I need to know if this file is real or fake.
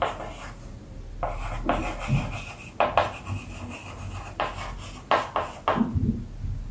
real